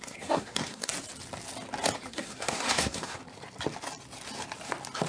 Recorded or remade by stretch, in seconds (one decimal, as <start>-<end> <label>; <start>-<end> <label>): 0.0-0.9 remade; 0.9-2.1 recorded; 2.1-3.2 remade; 3.2-5.1 recorded